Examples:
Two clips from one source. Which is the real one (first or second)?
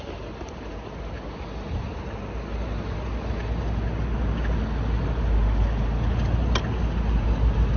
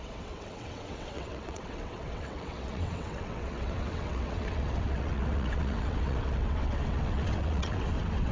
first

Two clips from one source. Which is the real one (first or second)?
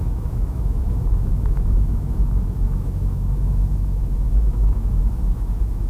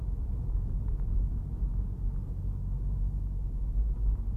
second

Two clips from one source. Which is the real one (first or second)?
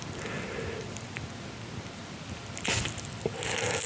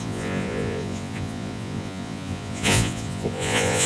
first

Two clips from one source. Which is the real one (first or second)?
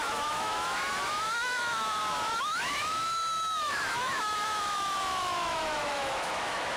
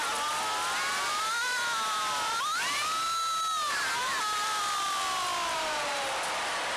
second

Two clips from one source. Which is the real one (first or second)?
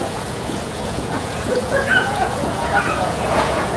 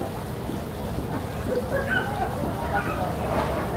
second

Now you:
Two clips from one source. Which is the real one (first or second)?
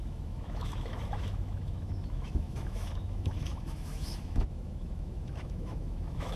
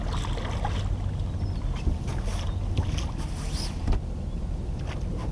second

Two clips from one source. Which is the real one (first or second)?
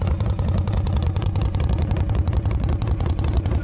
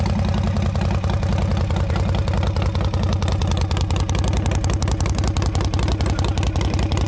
second